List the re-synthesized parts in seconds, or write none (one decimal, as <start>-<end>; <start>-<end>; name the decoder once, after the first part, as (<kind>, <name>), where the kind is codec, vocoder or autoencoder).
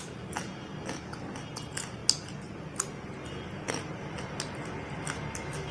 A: none